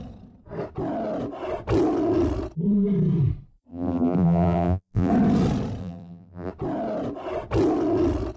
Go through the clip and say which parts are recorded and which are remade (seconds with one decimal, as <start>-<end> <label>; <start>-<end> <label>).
0.0-3.7 recorded; 3.7-5.1 remade; 5.1-5.8 recorded; 5.8-6.5 remade; 6.5-8.4 recorded